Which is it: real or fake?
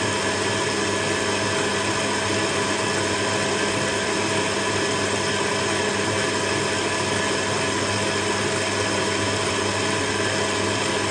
real